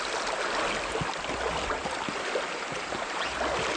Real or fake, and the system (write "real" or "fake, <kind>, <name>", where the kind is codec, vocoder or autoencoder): real